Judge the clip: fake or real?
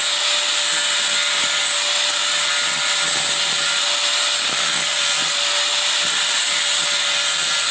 real